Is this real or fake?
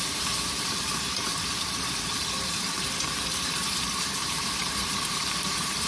fake